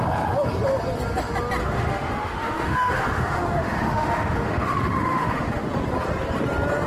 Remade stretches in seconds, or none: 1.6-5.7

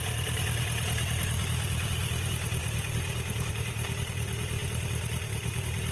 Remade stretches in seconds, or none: none

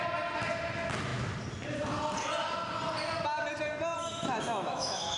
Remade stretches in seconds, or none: 4.0-5.2